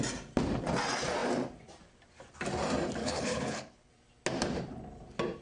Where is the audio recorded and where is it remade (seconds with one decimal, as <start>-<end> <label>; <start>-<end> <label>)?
0.0-3.0 recorded; 3.0-3.9 remade; 3.9-5.4 recorded

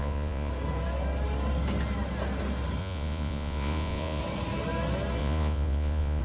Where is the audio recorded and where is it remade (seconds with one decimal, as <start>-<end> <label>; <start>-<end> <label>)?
0.0-0.5 remade; 0.5-2.8 recorded; 2.8-4.2 remade; 4.2-5.2 recorded; 5.2-6.2 remade